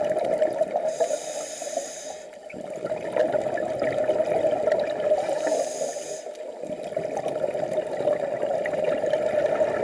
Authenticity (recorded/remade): recorded